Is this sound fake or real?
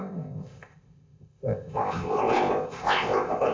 fake